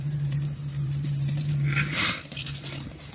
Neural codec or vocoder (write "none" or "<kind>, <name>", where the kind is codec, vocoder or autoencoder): vocoder, BigVGAN v2